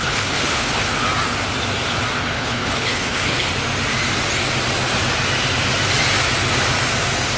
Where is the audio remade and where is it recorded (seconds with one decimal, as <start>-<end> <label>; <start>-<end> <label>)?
0.0-0.8 remade; 0.8-2.2 recorded; 2.2-3.5 remade; 3.5-7.4 recorded